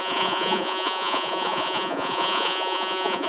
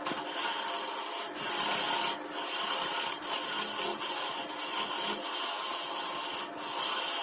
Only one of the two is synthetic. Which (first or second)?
first